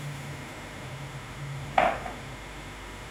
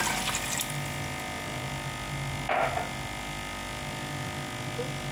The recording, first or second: second